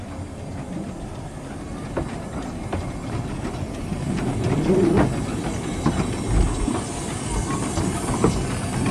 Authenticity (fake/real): real